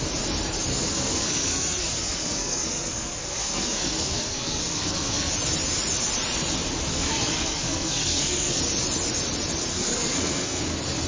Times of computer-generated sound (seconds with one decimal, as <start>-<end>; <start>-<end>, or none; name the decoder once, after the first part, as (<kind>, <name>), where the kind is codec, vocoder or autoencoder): 0.7-5.3 (codec, SNAC); 6.9-8.6; 9.7-10.6